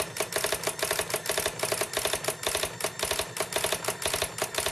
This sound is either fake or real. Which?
real